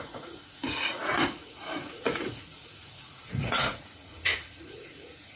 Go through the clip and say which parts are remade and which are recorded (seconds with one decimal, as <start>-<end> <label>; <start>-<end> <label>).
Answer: 0.0-5.4 remade